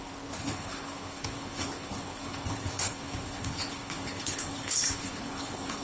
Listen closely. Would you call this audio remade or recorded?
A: remade